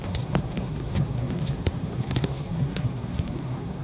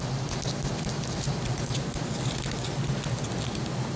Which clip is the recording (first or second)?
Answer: second